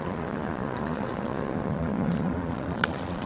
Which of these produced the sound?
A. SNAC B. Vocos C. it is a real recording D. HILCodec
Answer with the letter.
B